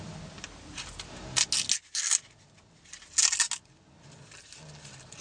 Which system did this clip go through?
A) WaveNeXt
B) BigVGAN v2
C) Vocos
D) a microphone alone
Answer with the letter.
D